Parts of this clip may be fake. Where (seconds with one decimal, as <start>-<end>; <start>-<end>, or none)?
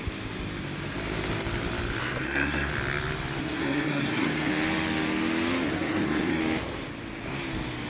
2.0-2.7; 3.4-4.5; 5.7-6.4